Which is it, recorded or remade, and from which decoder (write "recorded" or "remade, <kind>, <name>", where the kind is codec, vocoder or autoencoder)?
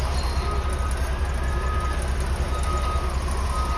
recorded